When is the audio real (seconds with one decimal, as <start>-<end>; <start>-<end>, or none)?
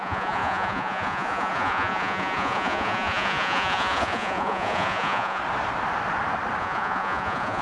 5.4-6.6